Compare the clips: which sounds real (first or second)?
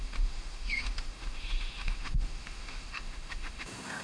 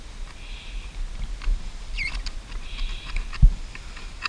second